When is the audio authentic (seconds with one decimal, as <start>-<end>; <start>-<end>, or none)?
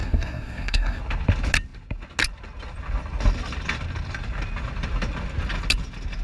1.0-6.2